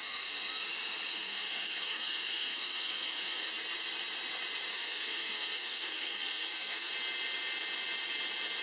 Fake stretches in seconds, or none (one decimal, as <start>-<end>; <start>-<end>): 0.0-0.6; 1.1-3.5; 4.7-6.9